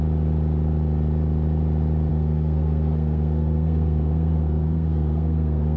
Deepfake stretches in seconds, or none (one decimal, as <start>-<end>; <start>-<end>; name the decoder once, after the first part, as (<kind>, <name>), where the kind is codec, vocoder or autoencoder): 2.1-5.8 (codec, SNAC)